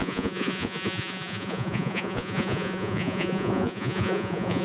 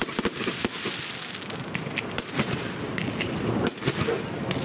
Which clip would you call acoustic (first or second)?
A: second